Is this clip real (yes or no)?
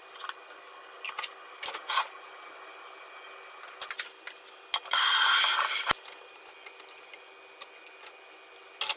yes